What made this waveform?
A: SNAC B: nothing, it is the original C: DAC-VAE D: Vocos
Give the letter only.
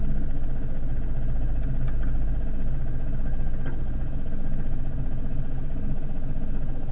B